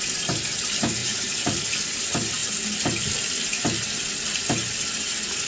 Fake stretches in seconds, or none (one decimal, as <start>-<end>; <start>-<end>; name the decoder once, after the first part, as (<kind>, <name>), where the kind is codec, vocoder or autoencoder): 1.0-1.6 (vocoder, Vocos)